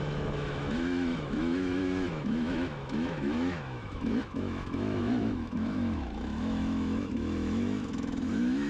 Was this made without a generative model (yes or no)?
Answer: no